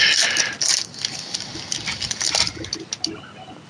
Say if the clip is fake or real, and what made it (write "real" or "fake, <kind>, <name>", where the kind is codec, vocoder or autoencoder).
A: real